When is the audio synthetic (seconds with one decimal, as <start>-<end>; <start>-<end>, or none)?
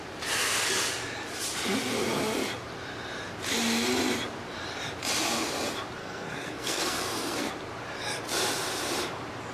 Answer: 6.0-7.5